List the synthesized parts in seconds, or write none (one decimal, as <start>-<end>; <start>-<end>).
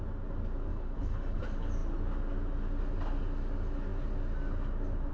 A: 0.7-1.4